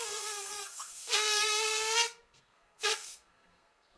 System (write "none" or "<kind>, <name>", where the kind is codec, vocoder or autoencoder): codec, SNAC